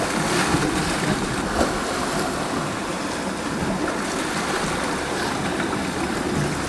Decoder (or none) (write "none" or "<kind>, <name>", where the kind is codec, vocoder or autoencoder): none